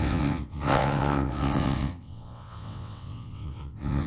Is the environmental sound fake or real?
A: fake